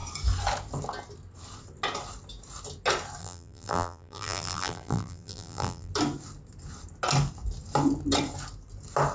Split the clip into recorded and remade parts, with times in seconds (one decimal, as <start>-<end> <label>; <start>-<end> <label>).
0.0-3.2 recorded; 3.2-5.9 remade; 5.9-9.1 recorded